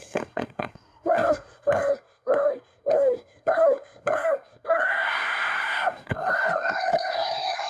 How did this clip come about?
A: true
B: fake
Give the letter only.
B